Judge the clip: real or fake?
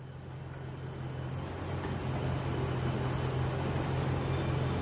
real